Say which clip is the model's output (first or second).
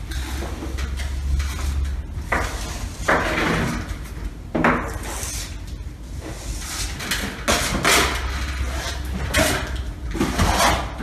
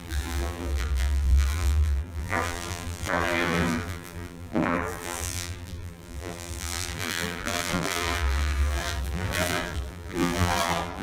second